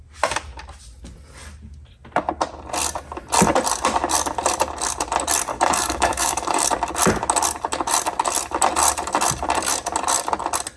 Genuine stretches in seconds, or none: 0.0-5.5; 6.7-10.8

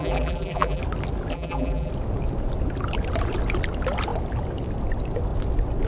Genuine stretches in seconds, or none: 0.8-1.3; 1.9-5.9